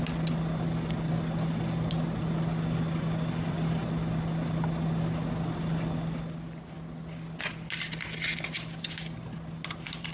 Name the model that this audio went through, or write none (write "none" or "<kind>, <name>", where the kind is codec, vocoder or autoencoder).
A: none